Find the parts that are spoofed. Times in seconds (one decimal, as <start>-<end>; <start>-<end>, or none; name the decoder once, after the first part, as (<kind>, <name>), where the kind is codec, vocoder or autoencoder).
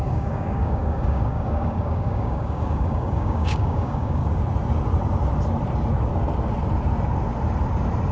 0.0-4.2 (codec, DAC)